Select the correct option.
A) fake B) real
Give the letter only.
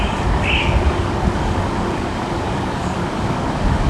A